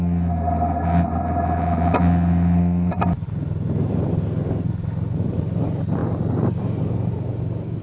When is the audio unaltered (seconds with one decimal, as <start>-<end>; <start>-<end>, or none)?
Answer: 0.0-7.8